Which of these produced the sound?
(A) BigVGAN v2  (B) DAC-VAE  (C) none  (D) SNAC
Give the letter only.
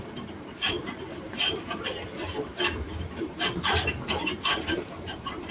A